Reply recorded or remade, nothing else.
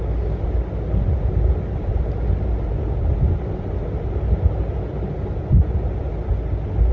recorded